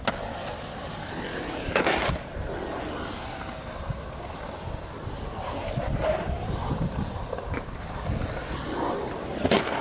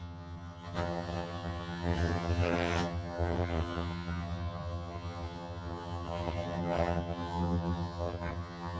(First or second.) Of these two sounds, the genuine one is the first